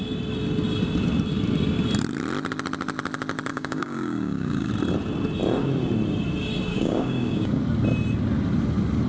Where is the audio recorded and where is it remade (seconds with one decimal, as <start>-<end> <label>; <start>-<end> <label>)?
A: 0.0-3.5 recorded; 3.5-4.7 remade; 4.7-6.7 recorded; 6.7-7.6 remade; 7.6-9.1 recorded